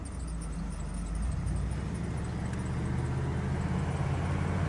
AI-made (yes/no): no